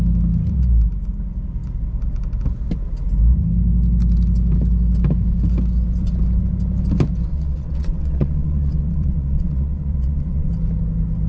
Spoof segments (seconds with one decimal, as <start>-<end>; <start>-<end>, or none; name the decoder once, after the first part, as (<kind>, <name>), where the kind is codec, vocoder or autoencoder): 7.3-10.5 (vocoder, WaveNeXt)